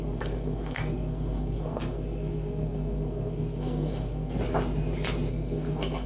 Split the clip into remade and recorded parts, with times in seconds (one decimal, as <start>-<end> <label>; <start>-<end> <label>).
0.0-4.4 remade; 4.4-5.3 recorded; 5.3-6.1 remade